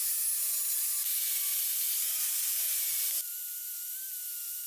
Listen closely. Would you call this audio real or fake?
fake